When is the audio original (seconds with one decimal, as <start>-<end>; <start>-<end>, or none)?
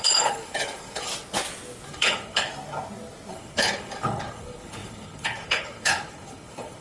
1.1-1.9; 2.5-3.3